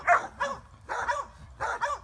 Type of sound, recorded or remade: recorded